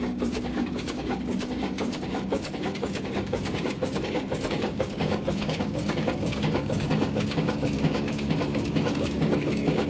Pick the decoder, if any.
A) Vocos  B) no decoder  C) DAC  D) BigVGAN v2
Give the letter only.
C